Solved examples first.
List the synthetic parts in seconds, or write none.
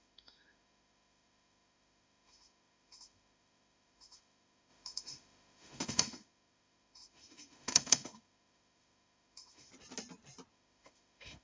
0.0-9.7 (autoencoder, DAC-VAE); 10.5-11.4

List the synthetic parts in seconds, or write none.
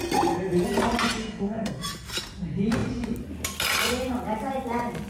1.2-1.8 (codec, SNAC)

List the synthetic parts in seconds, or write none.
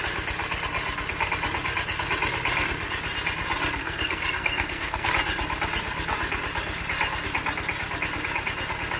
3.8-5.1 (codec, SNAC)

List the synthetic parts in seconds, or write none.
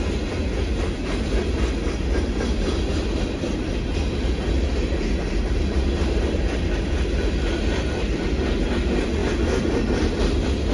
none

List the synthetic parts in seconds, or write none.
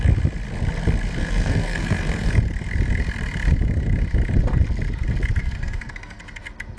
1.2-2.3 (codec, SNAC); 5.4-6.2